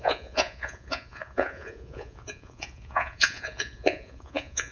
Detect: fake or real fake